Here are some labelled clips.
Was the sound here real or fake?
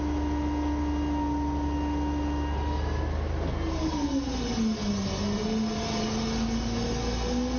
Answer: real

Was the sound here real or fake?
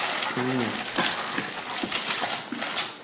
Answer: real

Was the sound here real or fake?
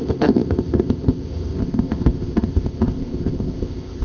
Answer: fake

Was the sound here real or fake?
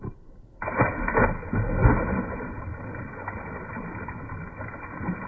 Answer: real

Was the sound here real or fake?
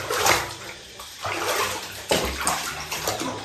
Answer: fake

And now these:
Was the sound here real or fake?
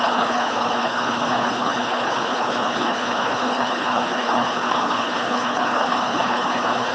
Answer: fake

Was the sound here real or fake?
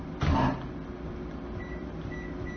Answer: real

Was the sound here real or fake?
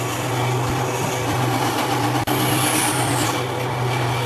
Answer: real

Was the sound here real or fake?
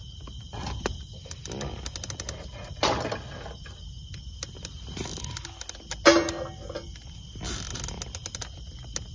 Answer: real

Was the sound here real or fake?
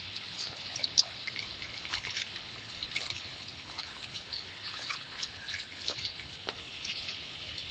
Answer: fake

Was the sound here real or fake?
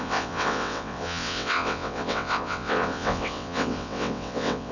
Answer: fake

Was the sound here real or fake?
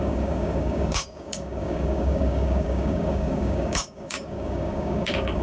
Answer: fake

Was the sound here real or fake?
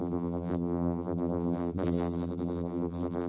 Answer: fake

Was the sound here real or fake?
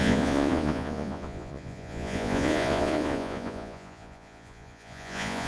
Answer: fake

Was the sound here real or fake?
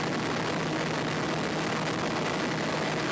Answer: real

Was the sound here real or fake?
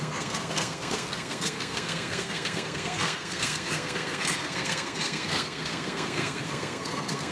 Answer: fake